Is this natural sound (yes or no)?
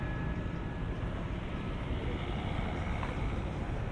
no